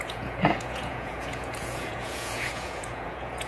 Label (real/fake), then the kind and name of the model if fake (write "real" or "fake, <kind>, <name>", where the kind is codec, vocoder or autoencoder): fake, vocoder, Vocos